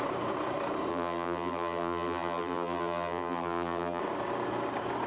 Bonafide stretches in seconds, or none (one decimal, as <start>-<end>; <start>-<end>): 0.0-0.9; 4.0-5.1